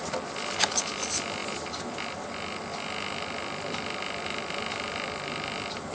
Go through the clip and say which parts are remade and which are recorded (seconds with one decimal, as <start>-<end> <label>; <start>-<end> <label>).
0.0-5.9 recorded